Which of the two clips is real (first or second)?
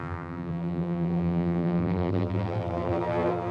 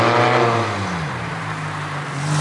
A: second